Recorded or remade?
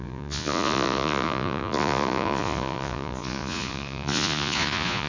remade